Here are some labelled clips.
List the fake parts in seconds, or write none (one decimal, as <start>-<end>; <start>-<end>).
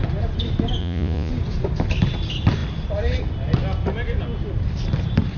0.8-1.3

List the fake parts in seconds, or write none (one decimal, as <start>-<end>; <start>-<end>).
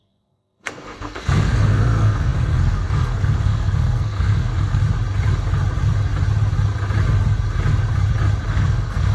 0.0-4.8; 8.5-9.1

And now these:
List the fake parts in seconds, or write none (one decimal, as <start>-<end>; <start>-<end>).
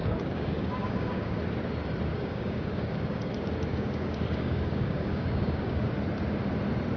0.0-1.4; 2.1-5.9